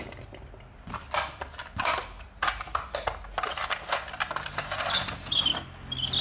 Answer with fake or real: real